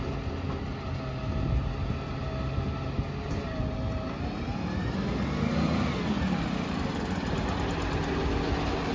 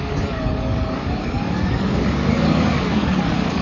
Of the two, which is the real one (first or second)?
first